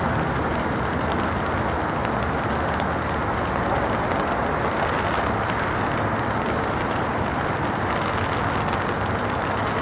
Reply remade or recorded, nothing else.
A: recorded